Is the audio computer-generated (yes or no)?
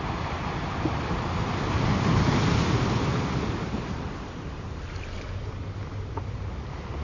no